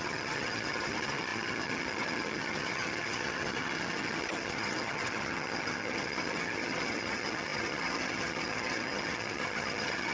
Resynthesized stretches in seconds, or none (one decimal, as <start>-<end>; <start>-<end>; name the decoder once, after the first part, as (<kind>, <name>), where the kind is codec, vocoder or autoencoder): 0.0-10.1 (vocoder, HiFi-GAN)